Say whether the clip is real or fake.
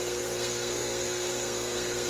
fake